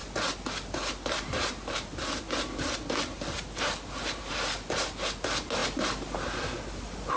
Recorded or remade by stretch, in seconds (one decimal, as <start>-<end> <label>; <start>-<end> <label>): 0.0-7.2 recorded